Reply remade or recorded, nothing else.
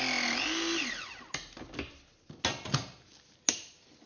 recorded